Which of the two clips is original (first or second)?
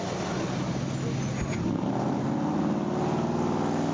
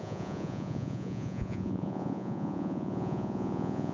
first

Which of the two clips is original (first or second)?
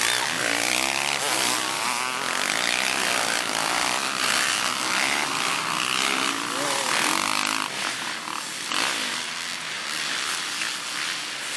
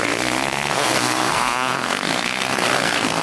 first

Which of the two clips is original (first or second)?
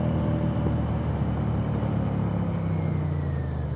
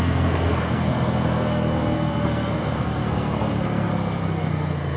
first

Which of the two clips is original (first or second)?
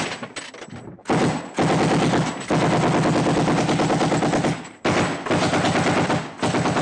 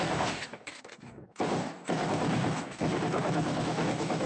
first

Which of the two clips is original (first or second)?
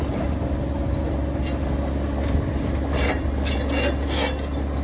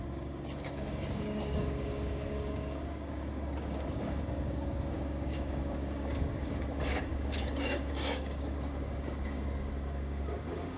first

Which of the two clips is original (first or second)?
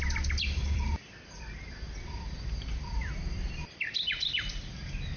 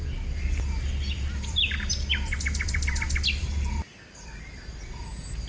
second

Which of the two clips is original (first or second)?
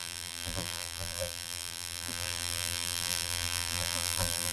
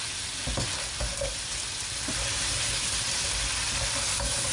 second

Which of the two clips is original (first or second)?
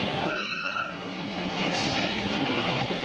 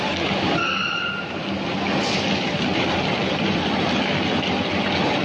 second